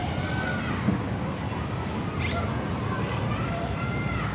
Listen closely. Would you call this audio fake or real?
real